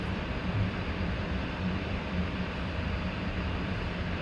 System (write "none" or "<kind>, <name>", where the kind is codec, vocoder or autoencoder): vocoder, BigVGAN v2